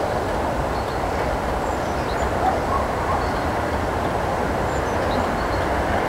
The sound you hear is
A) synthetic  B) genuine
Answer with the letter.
A